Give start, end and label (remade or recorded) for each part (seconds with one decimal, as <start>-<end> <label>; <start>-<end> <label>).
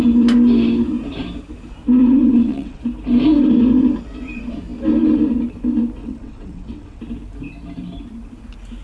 0.0-2.0 recorded; 2.0-2.8 remade; 2.8-6.0 recorded; 6.0-7.0 remade; 7.0-8.8 recorded